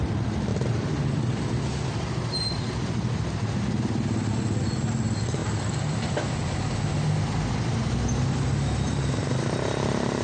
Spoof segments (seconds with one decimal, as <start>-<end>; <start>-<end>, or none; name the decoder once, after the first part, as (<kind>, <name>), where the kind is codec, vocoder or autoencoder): 0.5-1.6 (vocoder, BigVGAN v2); 5.4-6.0